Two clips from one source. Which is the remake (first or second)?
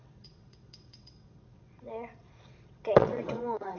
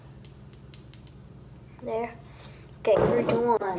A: first